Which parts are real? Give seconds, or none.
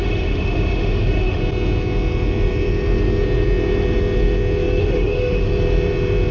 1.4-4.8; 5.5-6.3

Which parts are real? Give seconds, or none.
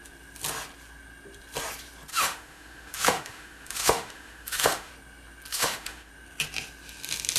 0.0-2.1; 4.9-5.5; 6.1-7.4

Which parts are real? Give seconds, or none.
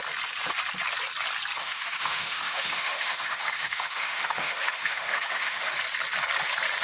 0.0-1.6; 5.7-6.8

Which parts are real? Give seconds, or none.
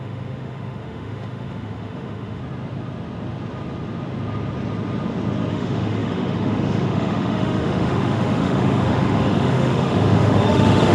2.4-5.5